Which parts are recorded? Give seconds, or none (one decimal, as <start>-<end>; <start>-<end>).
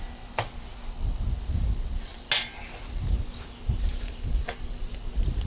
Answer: 0.0-5.5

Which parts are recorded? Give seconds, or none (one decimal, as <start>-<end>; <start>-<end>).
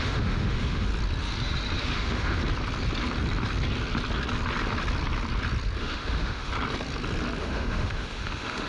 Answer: 0.9-1.8; 2.4-5.8; 6.5-7.4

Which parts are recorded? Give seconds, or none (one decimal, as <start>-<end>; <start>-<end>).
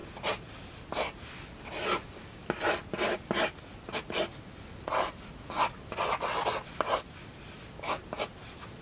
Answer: 0.0-8.8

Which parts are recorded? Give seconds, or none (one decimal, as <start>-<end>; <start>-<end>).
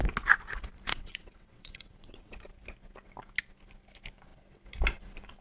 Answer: 0.0-0.9; 2.4-5.4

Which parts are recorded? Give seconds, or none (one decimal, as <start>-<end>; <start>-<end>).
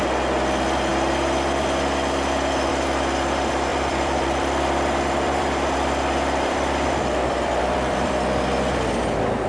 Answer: 0.0-3.7; 8.1-9.5